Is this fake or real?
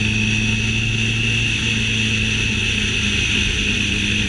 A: real